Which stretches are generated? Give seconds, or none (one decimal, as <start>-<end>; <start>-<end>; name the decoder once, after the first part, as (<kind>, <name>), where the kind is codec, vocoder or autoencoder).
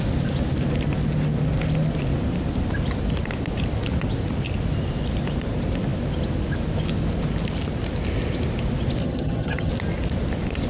9.0-9.7 (vocoder, HiFi-GAN)